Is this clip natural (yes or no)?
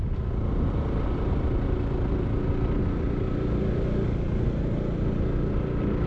yes